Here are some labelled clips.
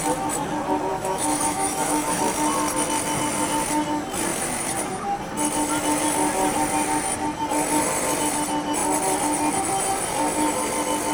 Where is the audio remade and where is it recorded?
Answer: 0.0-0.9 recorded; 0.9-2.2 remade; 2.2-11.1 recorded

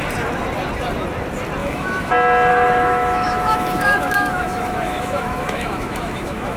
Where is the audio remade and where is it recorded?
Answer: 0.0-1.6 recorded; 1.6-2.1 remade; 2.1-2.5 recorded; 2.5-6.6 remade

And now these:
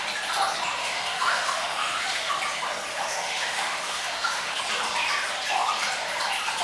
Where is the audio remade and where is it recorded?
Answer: 0.0-0.8 recorded; 0.8-2.3 remade; 2.3-2.9 recorded; 2.9-4.6 remade; 4.6-6.6 recorded